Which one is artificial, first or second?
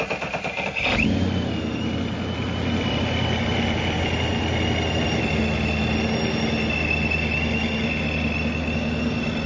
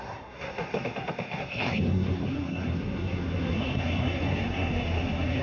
second